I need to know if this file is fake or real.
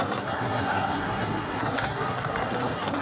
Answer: fake